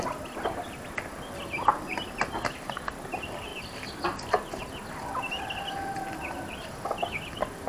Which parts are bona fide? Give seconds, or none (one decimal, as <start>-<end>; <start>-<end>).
0.0-7.7